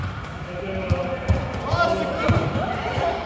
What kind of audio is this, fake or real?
real